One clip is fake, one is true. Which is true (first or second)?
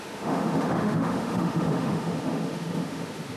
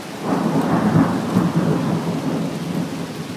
second